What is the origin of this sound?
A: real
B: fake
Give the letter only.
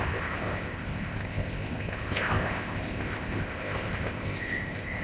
B